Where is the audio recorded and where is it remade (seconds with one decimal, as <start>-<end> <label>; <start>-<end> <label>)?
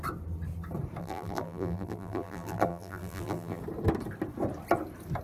0.0-1.0 recorded; 1.0-3.6 remade; 3.6-5.2 recorded